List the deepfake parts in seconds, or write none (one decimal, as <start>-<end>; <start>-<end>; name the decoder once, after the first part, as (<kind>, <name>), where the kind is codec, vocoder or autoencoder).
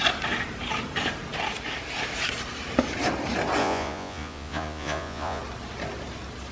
3.6-5.4 (vocoder, Vocos)